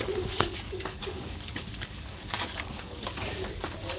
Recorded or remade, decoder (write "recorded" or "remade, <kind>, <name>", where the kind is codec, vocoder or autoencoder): remade, codec, DAC